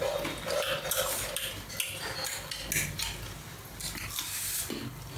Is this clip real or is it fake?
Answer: real